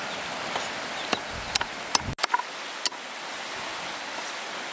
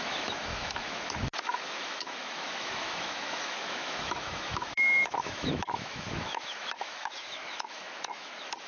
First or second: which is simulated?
second